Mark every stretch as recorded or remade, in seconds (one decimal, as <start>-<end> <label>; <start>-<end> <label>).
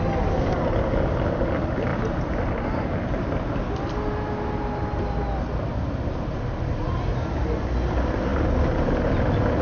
0.0-9.6 recorded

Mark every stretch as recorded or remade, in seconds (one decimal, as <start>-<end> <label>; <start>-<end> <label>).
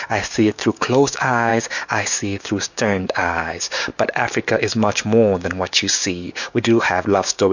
0.0-3.9 remade; 3.9-4.6 recorded; 4.6-7.5 remade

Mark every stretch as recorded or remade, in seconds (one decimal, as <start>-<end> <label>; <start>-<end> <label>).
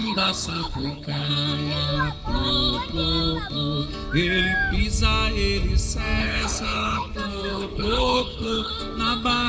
0.0-1.3 remade; 1.3-6.2 recorded; 6.2-7.1 remade; 7.1-7.5 recorded; 7.5-8.7 remade; 8.7-9.5 recorded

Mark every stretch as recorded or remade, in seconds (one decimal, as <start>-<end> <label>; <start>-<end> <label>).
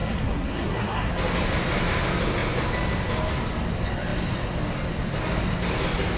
0.0-1.1 remade; 1.1-6.2 recorded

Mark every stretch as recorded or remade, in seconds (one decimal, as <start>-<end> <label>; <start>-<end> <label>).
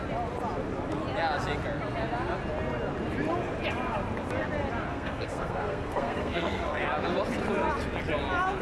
0.0-4.9 recorded; 4.9-6.8 remade; 6.8-8.6 recorded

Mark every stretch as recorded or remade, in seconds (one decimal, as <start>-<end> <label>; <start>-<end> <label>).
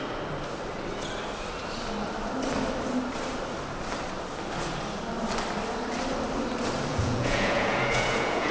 0.0-6.9 recorded; 6.9-8.5 remade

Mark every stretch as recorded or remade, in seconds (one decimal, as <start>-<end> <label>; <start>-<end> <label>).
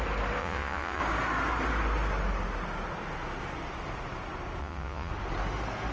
0.0-0.4 recorded; 0.4-1.0 remade; 1.0-4.6 recorded; 4.6-5.1 remade; 5.1-5.9 recorded